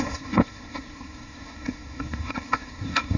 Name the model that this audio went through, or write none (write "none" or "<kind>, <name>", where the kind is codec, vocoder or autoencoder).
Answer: codec, SNAC